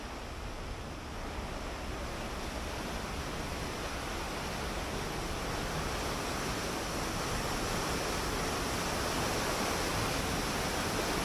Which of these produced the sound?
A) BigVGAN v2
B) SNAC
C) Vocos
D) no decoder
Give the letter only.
D